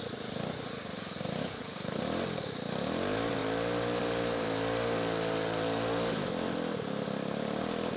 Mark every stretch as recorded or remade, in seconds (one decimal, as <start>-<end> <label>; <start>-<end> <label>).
0.0-1.4 recorded; 1.4-2.0 remade; 2.0-8.0 recorded